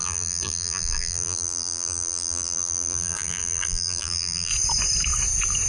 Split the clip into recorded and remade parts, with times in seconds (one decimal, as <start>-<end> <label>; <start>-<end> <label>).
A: 0.0-4.5 remade; 4.5-5.7 recorded